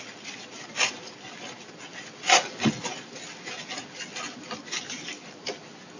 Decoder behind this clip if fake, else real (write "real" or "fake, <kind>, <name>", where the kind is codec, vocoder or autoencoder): real